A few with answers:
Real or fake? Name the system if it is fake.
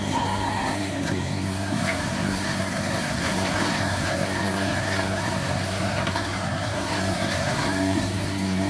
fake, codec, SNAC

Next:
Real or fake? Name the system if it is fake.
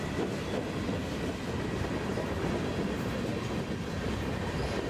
real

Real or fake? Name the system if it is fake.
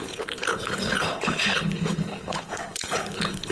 fake, codec, HILCodec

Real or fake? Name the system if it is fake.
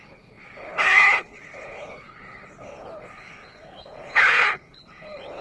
fake, codec, HILCodec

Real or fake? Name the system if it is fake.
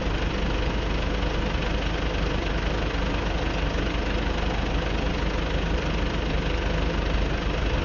real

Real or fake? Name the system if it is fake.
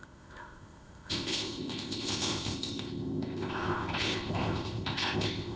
fake, codec, ZipCodec